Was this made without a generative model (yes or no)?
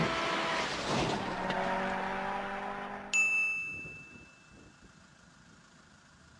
yes